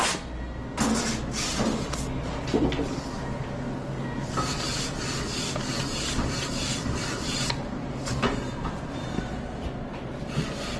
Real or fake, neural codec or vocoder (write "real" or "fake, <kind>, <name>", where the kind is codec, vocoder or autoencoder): real